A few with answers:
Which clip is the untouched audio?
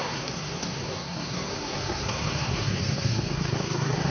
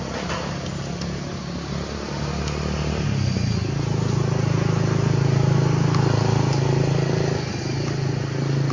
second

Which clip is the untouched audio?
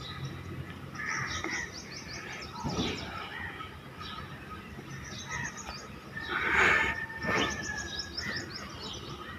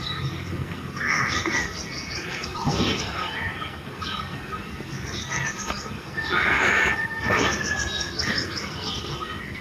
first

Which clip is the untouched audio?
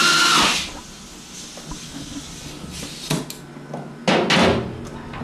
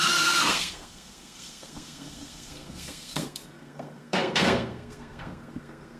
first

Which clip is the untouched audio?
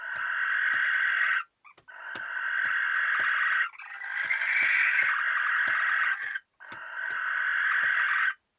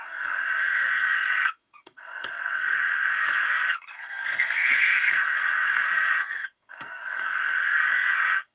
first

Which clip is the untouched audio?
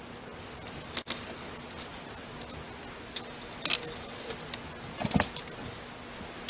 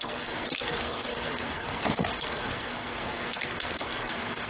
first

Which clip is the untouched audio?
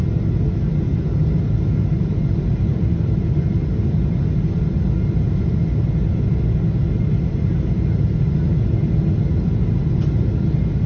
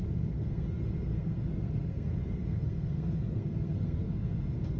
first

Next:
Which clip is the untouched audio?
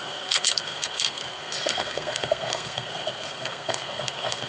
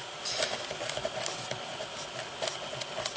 second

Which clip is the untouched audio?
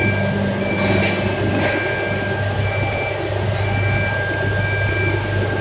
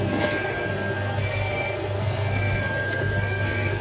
first